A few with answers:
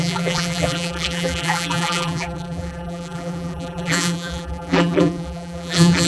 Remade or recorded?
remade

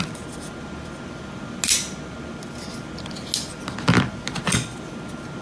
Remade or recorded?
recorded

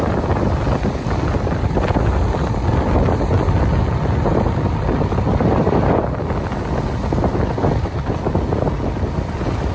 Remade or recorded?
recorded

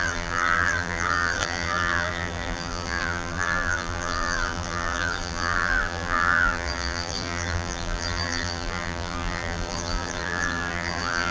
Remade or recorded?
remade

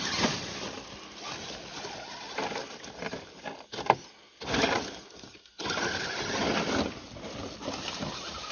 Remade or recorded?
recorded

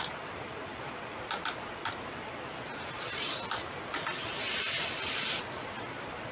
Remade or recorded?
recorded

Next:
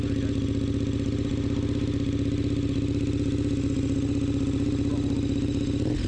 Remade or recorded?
recorded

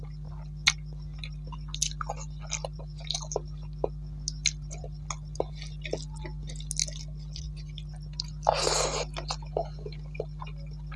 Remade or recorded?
recorded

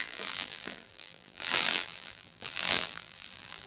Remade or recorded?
remade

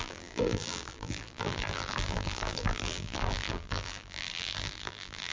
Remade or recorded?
remade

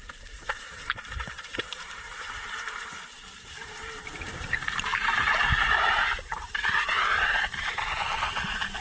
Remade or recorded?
remade